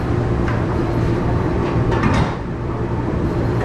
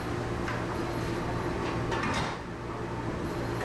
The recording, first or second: second